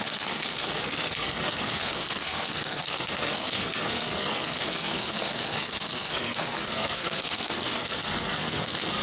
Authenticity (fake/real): fake